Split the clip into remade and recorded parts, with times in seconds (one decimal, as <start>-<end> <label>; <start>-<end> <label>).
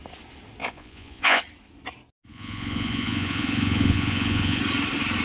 0.0-0.6 recorded; 0.6-1.4 remade; 1.4-2.3 recorded; 2.3-4.6 remade; 4.6-5.2 recorded